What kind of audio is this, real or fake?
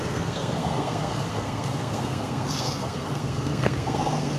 fake